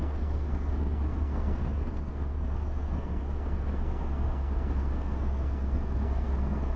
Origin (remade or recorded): remade